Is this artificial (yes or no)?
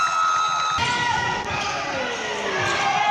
no